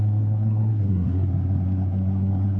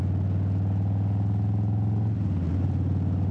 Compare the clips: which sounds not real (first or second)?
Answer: first